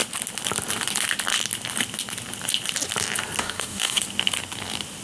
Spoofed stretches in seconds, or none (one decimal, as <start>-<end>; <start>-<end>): 3.4-4.0